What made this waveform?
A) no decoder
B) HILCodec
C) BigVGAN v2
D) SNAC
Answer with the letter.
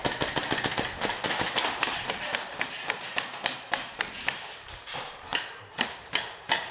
A